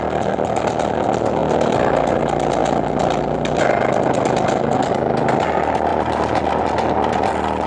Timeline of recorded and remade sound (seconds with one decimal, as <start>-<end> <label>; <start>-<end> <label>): 0.0-7.7 recorded